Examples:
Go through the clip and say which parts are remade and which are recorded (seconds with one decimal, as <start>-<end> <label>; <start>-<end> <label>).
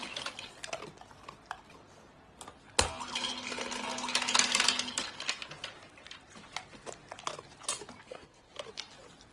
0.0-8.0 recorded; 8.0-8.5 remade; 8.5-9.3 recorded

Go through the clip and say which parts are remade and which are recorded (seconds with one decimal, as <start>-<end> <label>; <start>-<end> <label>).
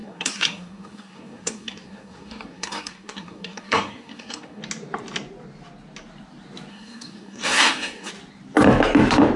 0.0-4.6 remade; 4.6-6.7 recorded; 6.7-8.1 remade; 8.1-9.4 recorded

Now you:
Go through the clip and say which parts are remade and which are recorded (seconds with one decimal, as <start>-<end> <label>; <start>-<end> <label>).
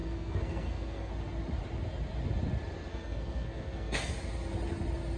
0.0-1.1 remade; 1.1-2.9 recorded; 2.9-4.1 remade; 4.1-5.2 recorded